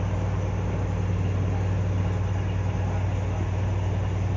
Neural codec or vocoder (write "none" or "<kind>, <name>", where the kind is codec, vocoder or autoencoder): none